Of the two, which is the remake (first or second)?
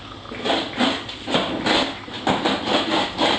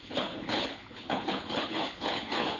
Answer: second